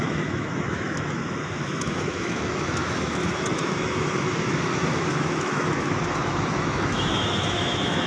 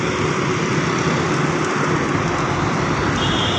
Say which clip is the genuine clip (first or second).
second